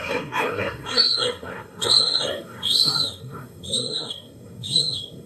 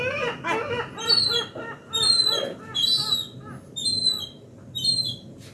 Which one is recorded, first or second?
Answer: second